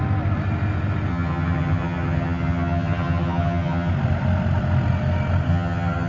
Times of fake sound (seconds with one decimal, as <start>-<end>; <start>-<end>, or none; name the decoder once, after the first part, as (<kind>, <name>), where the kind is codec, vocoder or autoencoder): 1.1-3.9 (vocoder, HiFi-GAN); 5.5-6.1